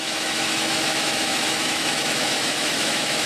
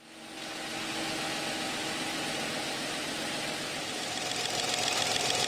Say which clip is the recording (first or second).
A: second